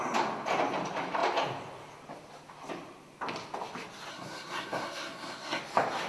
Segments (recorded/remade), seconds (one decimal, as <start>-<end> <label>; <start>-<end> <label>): 0.0-4.1 recorded; 4.1-5.6 remade; 5.6-6.1 recorded